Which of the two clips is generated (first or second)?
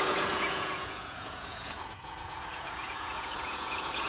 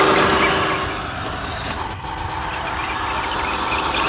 first